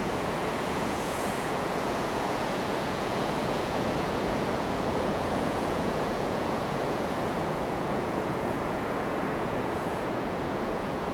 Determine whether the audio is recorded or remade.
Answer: remade